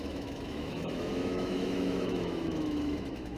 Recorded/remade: remade